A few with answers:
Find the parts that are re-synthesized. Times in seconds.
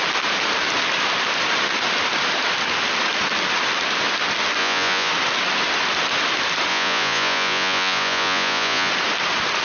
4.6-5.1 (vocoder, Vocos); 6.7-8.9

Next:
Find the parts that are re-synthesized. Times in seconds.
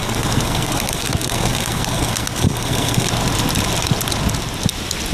0.0-3.1 (codec, SNAC)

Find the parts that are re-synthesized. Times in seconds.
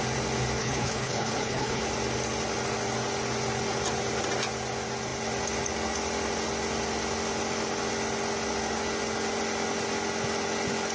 0.6-1.8 (codec, HILCodec)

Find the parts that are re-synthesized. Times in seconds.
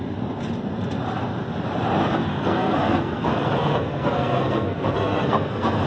2.3-5.9 (codec, SNAC)